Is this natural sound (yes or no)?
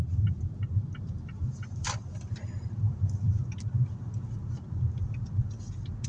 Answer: yes